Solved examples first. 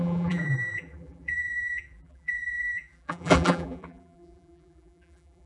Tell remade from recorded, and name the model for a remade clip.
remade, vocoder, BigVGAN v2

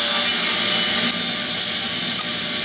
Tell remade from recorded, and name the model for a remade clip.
recorded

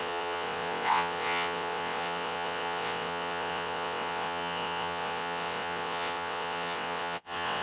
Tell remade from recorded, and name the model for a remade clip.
remade, vocoder, WaveNeXt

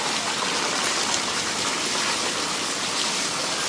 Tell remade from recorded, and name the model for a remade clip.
recorded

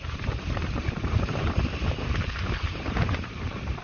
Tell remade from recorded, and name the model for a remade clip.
remade, vocoder, BigVGAN v2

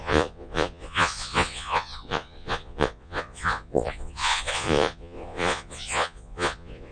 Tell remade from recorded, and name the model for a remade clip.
remade, vocoder, Vocos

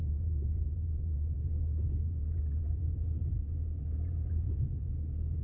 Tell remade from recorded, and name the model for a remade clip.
remade, vocoder, BigVGAN v2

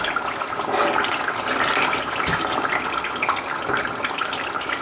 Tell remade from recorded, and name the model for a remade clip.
recorded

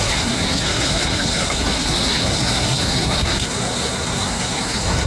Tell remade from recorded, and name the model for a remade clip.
remade, codec, SNAC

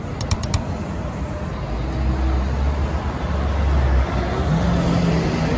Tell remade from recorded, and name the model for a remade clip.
recorded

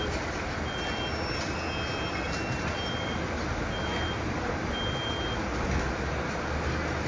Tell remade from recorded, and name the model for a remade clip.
recorded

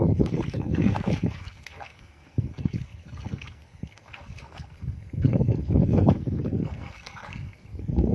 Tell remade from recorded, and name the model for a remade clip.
remade, codec, SNAC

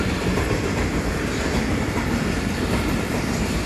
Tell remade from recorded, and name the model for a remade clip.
recorded